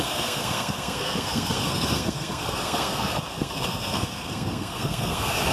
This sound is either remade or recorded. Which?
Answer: remade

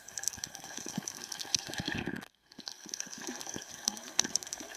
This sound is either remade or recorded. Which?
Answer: remade